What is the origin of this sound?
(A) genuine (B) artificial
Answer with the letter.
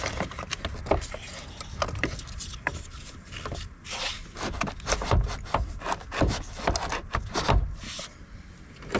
A